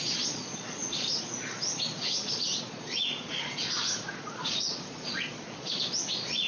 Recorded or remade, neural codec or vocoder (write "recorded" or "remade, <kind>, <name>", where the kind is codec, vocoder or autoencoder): remade, vocoder, Vocos